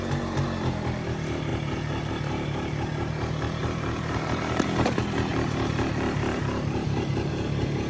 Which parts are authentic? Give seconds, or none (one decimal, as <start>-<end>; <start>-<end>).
0.0-3.6; 4.7-5.3; 7.3-7.9